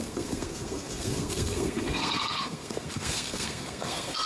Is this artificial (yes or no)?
yes